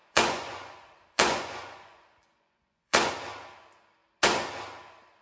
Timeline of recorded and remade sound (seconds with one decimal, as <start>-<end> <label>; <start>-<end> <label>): 0.0-3.1 remade; 3.1-5.2 recorded